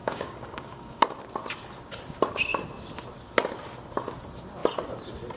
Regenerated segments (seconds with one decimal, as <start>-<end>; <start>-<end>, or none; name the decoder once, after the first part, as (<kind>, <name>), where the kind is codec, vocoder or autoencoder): 0.0-1.0 (codec, DAC)